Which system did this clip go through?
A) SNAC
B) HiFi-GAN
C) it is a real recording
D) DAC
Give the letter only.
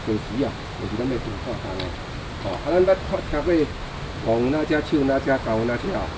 C